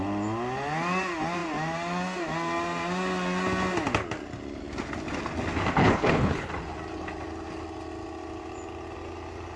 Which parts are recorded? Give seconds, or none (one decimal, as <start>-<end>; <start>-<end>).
0.0-5.8; 6.5-9.6